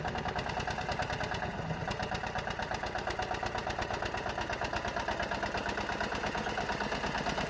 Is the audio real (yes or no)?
yes